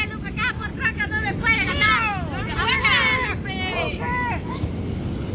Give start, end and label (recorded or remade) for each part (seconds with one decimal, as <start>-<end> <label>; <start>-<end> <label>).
0.0-5.3 recorded